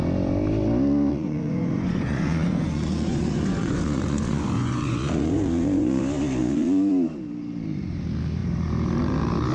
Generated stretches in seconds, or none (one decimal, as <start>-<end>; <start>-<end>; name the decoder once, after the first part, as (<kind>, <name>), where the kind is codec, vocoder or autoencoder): 1.1-6.0 (vocoder, Vocos); 6.4-6.9